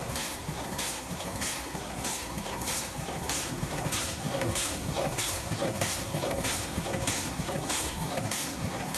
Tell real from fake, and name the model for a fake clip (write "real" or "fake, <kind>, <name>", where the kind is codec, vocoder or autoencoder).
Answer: fake, codec, SNAC